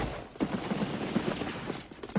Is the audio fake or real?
real